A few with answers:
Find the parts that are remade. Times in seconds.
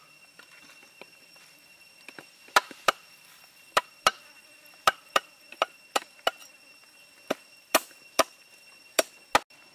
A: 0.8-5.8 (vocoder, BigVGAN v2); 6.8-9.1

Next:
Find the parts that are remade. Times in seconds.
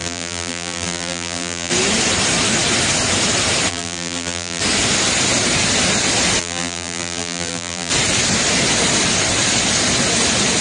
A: 0.0-1.7 (vocoder, BigVGAN v2); 3.7-4.6; 6.4-7.9